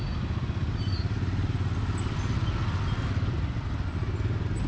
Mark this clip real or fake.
real